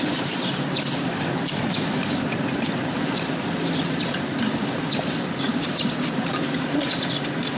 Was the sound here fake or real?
fake